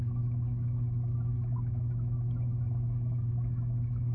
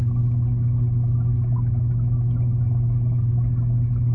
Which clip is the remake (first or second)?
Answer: first